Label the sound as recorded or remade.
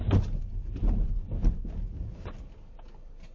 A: recorded